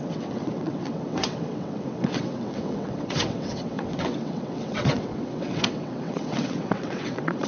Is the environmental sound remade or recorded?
remade